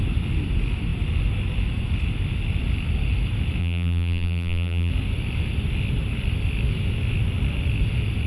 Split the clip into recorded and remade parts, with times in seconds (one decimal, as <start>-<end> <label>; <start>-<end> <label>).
0.0-3.6 recorded; 3.6-4.9 remade; 4.9-8.3 recorded